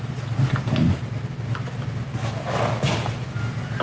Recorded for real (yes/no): yes